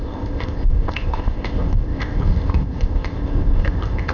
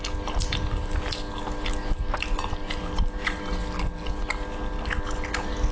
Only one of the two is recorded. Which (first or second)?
second